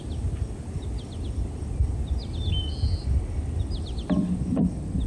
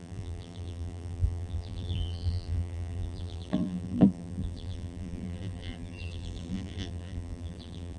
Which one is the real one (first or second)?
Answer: first